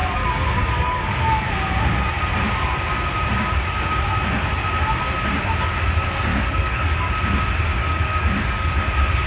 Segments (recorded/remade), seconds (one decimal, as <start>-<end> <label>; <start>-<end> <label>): 0.0-1.5 remade; 1.5-6.3 recorded; 6.3-7.1 remade; 7.1-7.8 recorded; 7.8-8.7 remade; 8.7-9.3 recorded